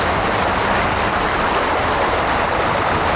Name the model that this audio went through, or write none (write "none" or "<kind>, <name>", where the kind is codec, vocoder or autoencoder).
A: none